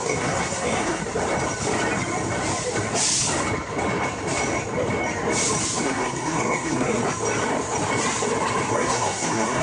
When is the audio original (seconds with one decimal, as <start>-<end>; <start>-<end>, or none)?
1.0-5.8; 7.0-8.7